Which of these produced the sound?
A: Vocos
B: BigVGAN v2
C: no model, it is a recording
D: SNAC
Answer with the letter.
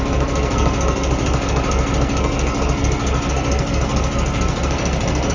D